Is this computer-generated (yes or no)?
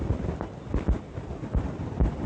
no